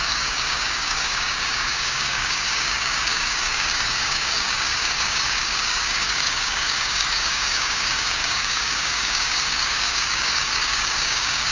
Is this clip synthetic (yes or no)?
yes